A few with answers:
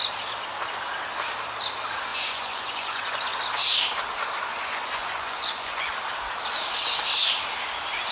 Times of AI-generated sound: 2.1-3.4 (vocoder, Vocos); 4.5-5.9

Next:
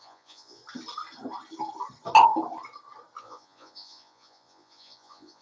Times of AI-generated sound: 0.0-0.6 (vocoder, Vocos); 3.2-5.4

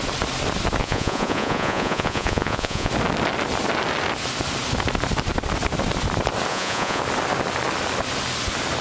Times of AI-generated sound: 0.8-2.9 (vocoder, Vocos); 6.5-7.0

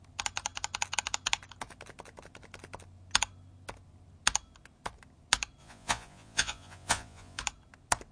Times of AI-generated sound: 5.6-7.4 (vocoder, Vocos)

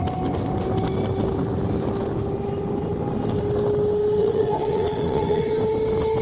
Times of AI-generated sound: 4.2-5.5 (vocoder, Vocos)

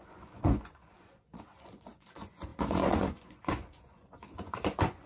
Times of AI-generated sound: 0.0-5.1 (vocoder, Vocos)

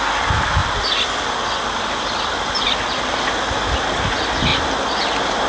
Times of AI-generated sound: none